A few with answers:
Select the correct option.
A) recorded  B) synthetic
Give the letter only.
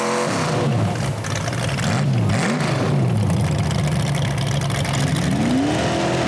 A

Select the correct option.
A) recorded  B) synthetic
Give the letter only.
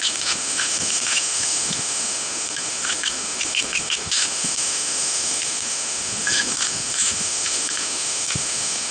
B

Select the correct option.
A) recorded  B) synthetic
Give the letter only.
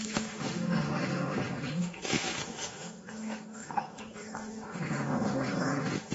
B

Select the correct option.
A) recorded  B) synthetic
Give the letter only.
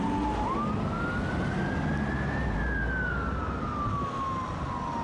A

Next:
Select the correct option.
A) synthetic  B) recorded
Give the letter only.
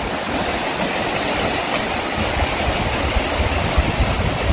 B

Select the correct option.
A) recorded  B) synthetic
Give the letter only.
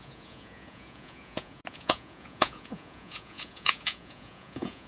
B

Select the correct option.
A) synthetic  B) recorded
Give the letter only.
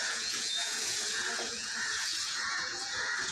A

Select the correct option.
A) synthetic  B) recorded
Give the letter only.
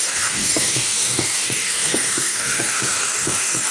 A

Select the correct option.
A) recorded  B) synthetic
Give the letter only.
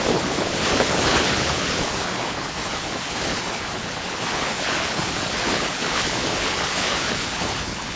B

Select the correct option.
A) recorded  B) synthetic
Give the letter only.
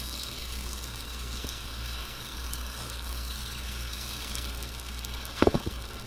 B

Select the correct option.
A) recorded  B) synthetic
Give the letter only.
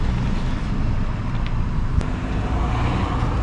A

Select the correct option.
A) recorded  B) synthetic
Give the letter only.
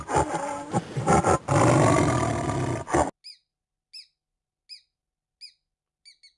A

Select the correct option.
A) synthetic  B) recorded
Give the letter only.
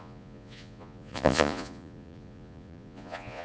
A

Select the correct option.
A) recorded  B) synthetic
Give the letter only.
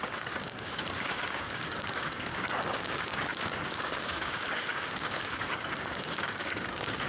B